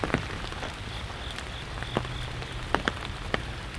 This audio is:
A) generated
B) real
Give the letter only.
B